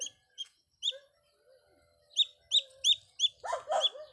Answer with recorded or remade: recorded